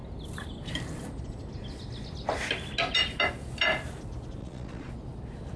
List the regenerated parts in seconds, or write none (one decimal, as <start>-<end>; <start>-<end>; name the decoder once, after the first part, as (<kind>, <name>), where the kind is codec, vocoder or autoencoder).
4.4-4.9 (vocoder, Vocos)